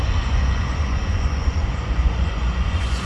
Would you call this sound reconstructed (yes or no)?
yes